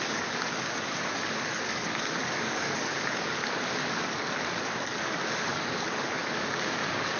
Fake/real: fake